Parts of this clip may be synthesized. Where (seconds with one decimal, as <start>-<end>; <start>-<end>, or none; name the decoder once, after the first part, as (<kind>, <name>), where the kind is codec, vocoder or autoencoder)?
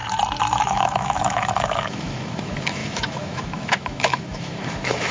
0.5-5.1 (autoencoder, DAC-VAE)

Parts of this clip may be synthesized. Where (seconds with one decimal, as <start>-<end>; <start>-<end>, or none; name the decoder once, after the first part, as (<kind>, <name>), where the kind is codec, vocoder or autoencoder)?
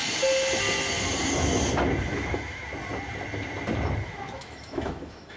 2.0-2.6 (autoencoder, DAC-VAE); 4.0-5.4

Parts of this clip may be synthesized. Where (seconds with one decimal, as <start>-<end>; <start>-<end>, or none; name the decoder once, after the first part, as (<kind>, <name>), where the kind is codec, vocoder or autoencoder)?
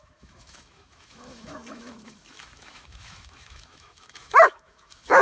0.0-5.2 (autoencoder, DAC-VAE)